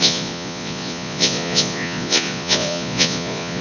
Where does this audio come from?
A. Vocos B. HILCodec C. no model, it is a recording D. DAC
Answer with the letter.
A